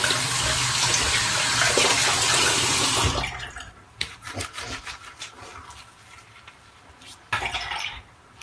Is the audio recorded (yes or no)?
yes